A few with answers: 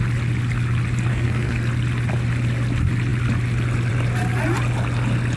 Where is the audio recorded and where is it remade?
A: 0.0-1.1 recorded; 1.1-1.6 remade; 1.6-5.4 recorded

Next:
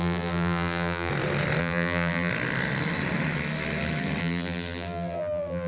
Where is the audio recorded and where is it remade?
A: 0.0-1.1 remade; 1.1-1.6 recorded; 1.6-2.3 remade; 2.3-4.2 recorded; 4.2-5.7 remade

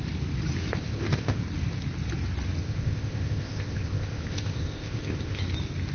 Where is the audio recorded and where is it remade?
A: 0.0-0.8 recorded; 0.8-1.4 remade; 1.4-2.6 recorded; 2.6-5.4 remade; 5.4-5.9 recorded

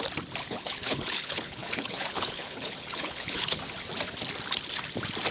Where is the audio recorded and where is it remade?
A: 0.0-0.4 recorded; 0.4-3.6 remade; 3.6-5.3 recorded